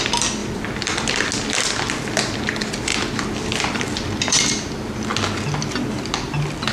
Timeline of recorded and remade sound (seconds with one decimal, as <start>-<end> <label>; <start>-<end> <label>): 0.0-0.4 recorded; 0.4-1.1 remade; 1.1-2.9 recorded; 2.9-4.4 remade; 4.4-6.7 recorded